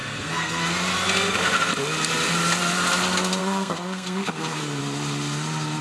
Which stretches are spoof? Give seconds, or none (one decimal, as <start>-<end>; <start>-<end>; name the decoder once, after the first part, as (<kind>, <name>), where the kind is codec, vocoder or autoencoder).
0.0-0.6 (codec, SNAC); 3.4-4.8